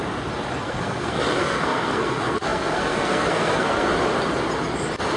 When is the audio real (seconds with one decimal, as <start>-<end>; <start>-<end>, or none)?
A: 0.0-0.6; 3.9-5.2

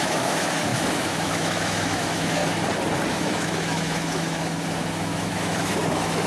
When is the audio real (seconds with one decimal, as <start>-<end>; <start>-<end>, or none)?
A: 2.4-3.1